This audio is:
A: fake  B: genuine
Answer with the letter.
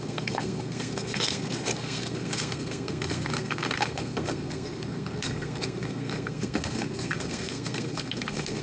A